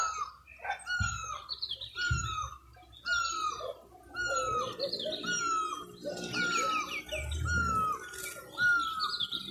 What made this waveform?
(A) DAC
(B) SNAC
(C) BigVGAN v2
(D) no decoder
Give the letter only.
D